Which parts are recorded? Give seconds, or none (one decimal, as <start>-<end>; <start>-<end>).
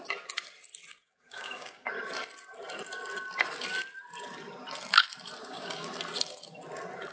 0.0-0.9; 1.9-5.4; 5.9-7.1